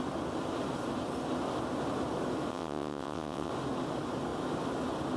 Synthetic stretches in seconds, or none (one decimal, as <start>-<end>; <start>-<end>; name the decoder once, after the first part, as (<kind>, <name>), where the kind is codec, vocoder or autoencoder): 2.5-3.5 (vocoder, WaveNeXt)